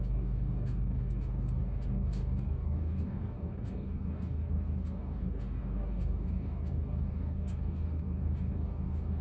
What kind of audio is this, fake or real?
fake